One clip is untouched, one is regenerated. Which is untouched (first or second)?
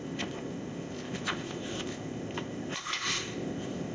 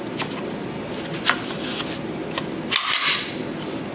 second